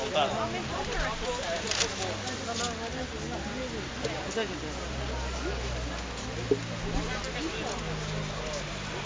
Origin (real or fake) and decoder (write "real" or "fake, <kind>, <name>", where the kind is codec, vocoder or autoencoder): real